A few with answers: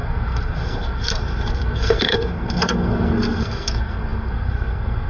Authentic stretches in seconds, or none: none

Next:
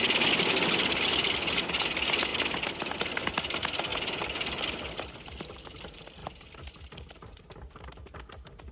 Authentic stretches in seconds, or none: 0.0-8.7

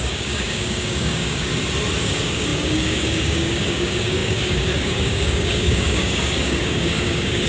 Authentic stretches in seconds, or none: 1.5-2.0

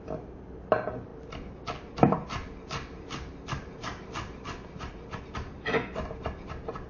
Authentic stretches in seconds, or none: 0.0-6.9

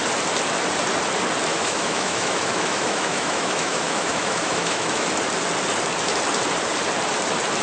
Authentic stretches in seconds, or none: 0.0-1.5; 5.1-7.6

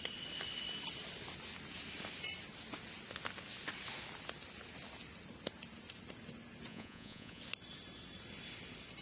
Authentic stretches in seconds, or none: 0.0-6.7; 7.4-9.0

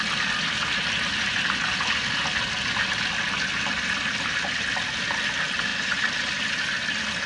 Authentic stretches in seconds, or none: 0.0-7.3